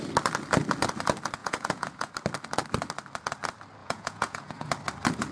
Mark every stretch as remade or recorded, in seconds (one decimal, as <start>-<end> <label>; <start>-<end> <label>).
0.0-1.4 recorded; 1.4-2.1 remade; 2.1-3.8 recorded; 3.8-4.7 remade; 4.7-5.3 recorded